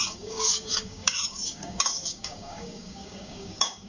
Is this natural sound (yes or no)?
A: no